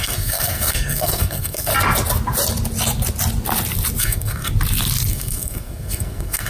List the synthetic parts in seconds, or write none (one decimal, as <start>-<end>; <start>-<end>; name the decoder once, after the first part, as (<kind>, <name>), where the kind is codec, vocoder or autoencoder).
0.0-1.7 (codec, SNAC); 4.0-4.5; 5.1-6.5